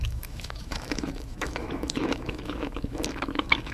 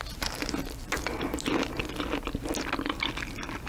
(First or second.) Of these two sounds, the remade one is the first